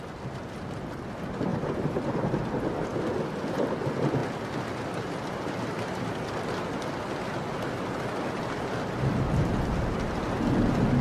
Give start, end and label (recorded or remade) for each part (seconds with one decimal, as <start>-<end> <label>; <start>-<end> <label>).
0.0-1.5 recorded; 1.5-2.3 remade; 2.3-11.0 recorded